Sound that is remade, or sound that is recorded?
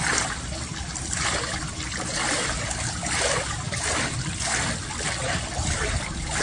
recorded